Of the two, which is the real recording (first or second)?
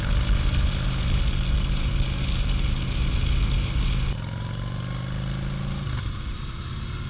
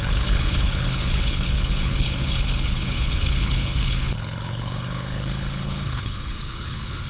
first